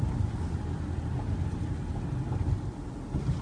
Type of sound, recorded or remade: recorded